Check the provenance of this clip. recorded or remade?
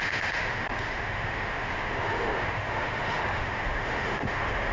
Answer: remade